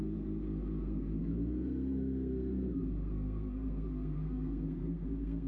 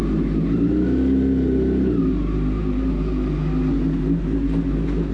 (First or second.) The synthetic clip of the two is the first